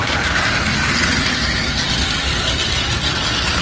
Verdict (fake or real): real